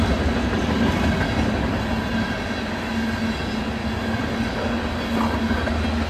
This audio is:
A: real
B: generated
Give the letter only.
A